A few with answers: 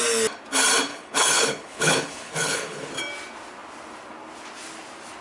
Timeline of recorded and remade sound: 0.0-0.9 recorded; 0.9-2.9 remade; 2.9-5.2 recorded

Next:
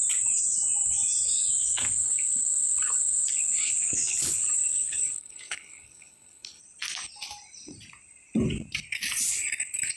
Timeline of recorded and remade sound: 0.0-1.6 recorded; 1.6-6.6 remade; 6.6-10.0 recorded

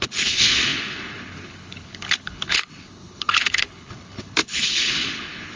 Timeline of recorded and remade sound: 0.0-5.6 remade

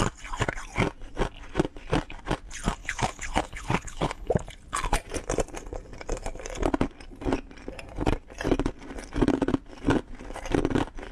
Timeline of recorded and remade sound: 0.0-2.8 recorded; 2.8-4.3 remade; 4.3-11.1 recorded

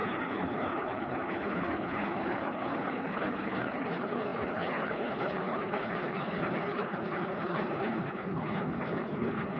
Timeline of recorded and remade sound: 0.0-9.6 remade

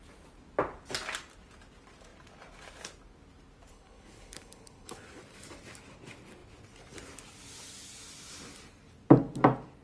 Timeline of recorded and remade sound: 0.0-3.7 recorded; 3.7-5.2 remade; 5.2-9.8 recorded

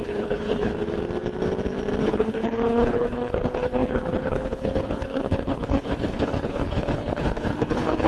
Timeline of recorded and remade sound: 0.0-0.7 remade; 0.7-2.0 recorded; 2.0-8.1 remade